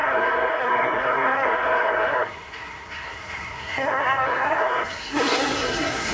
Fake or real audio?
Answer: fake